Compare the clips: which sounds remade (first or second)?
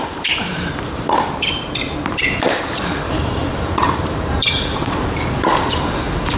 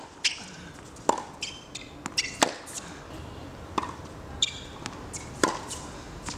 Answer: first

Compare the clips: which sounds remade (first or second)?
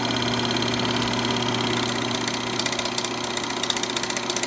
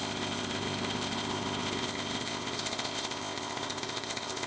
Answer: second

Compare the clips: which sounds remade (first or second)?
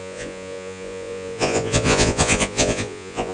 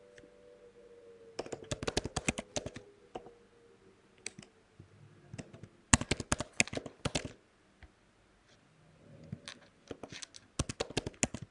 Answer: first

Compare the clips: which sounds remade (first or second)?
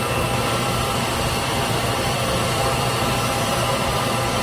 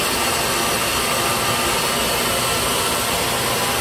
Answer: first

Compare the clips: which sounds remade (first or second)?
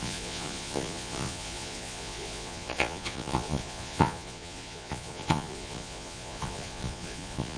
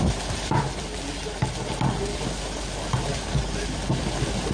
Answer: first